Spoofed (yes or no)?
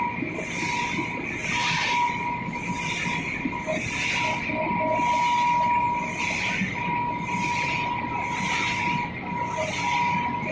no